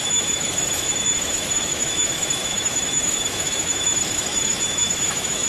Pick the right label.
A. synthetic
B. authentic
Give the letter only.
A